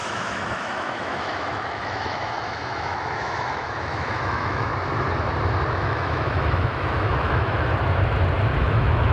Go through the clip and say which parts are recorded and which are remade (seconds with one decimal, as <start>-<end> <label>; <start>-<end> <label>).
0.0-4.7 remade; 4.7-5.7 recorded; 5.7-7.7 remade; 7.7-8.6 recorded; 8.6-9.1 remade